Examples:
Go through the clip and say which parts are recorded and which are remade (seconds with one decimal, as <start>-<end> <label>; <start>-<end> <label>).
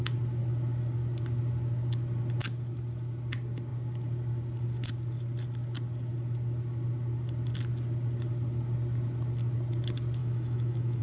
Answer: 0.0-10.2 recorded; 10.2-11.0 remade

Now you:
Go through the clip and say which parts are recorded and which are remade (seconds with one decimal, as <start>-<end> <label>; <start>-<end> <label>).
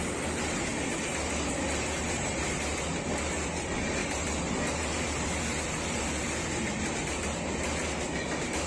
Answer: 0.0-8.7 recorded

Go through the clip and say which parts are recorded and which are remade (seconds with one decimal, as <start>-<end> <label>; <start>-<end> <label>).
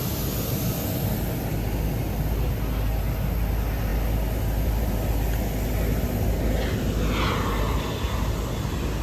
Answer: 0.0-9.0 recorded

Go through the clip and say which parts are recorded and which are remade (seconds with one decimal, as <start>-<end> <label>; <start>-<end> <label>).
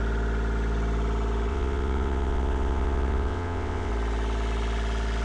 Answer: 0.0-1.5 recorded; 1.5-3.9 remade; 3.9-5.2 recorded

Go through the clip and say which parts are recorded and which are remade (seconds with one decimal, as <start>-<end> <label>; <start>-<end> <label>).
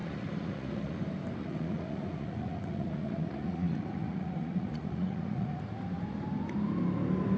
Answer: 0.0-1.0 remade; 1.0-1.4 recorded; 1.4-5.6 remade; 5.6-7.4 recorded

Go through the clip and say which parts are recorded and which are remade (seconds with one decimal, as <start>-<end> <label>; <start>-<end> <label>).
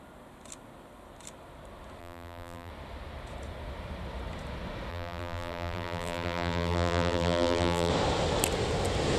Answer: 0.0-2.0 recorded; 2.0-2.7 remade; 2.7-4.9 recorded; 4.9-7.9 remade; 7.9-9.2 recorded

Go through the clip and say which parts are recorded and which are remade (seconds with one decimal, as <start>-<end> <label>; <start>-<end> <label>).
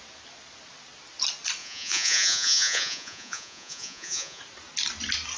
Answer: 0.0-1.6 recorded; 1.6-4.4 remade; 4.4-5.4 recorded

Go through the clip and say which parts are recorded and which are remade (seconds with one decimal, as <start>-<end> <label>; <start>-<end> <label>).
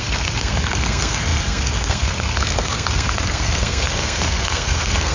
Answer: 0.0-5.1 remade